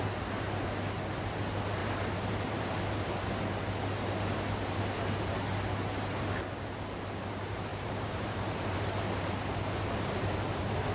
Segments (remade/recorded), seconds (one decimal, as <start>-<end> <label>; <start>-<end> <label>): 0.0-1.8 recorded; 1.8-3.1 remade; 3.1-7.7 recorded; 7.7-10.9 remade